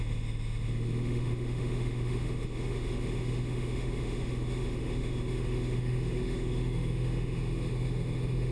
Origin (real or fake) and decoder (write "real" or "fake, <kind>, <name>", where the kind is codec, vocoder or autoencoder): fake, autoencoder, DAC-VAE